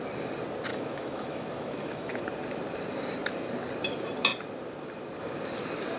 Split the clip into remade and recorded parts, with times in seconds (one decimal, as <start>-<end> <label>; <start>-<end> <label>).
0.0-0.7 recorded; 0.7-2.2 remade; 2.2-6.0 recorded